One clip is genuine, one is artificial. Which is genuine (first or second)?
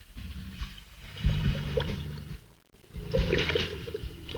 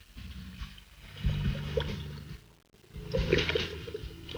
second